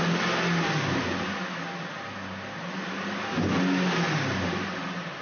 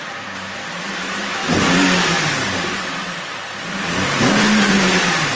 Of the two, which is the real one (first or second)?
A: first